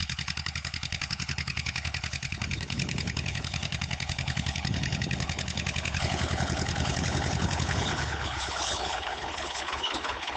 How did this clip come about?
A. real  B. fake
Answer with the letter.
B